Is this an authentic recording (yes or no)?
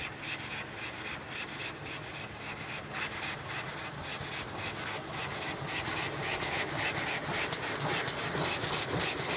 yes